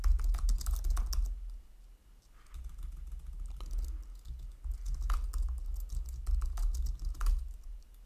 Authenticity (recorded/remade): recorded